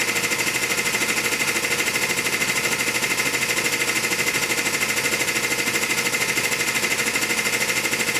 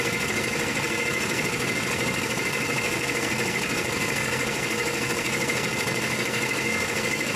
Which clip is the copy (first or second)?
second